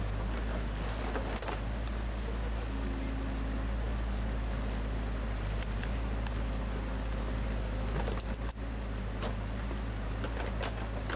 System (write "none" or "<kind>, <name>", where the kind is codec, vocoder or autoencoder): none